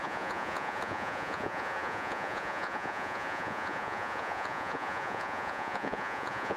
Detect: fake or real fake